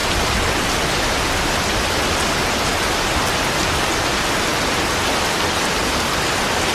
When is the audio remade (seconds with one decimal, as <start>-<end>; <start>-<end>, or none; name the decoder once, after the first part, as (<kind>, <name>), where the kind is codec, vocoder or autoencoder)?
none